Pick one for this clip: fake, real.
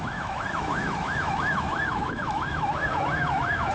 fake